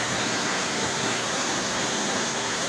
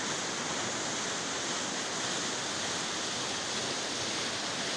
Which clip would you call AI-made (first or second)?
first